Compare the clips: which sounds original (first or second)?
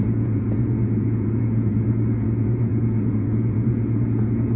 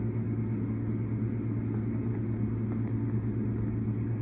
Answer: second